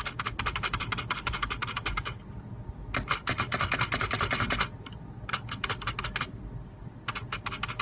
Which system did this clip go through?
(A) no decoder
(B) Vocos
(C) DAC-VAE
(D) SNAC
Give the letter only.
A